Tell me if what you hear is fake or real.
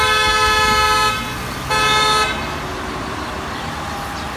real